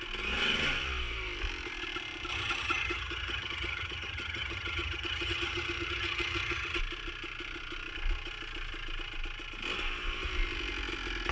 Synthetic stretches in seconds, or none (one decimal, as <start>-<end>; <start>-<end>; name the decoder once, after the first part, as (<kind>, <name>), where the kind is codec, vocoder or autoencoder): 2.3-6.8 (vocoder, HiFi-GAN)